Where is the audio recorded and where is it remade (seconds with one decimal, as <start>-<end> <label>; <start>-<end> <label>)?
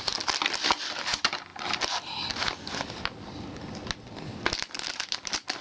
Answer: 0.0-1.5 remade; 1.5-4.9 recorded; 4.9-5.6 remade